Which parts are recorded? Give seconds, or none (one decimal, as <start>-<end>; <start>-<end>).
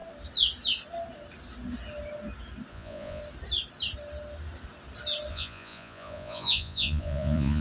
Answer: 0.0-2.7; 3.2-5.3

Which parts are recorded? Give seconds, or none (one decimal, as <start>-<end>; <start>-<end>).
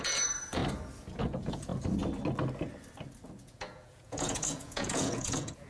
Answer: 0.6-1.2; 1.7-3.4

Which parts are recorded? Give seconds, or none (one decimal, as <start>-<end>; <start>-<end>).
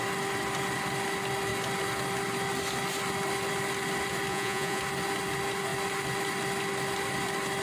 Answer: 0.0-4.3; 4.8-7.6